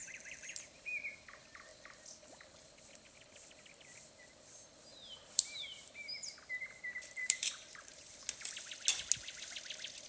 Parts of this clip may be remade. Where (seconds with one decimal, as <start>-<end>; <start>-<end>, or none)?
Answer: 0.0-0.9; 4.9-5.9; 7.2-8.2